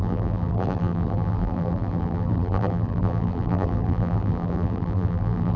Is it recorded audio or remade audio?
remade